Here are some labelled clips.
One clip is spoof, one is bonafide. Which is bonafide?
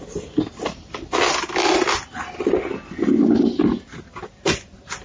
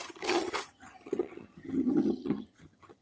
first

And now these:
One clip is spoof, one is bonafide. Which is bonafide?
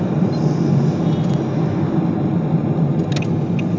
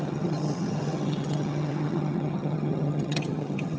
first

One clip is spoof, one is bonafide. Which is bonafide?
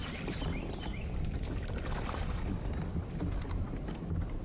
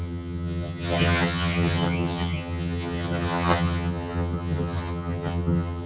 first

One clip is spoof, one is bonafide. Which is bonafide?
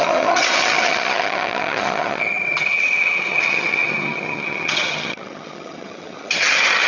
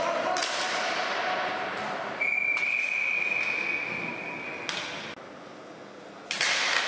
second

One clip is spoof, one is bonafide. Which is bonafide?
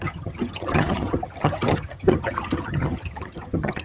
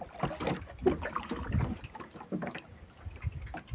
second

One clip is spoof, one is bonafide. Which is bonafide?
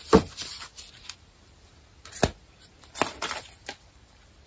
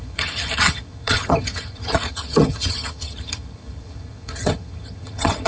first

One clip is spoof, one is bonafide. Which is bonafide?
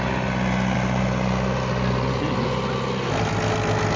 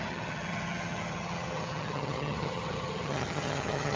first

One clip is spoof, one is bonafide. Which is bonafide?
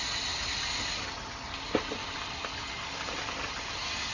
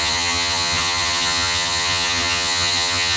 first